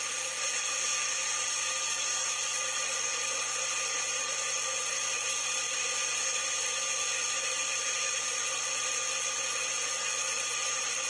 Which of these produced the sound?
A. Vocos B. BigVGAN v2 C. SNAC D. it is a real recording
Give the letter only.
D